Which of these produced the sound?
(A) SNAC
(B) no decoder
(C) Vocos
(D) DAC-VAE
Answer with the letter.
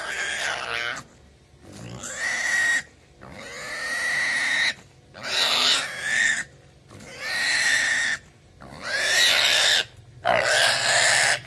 B